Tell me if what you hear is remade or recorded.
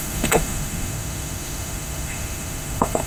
remade